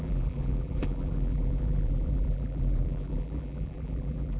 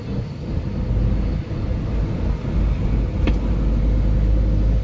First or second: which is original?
second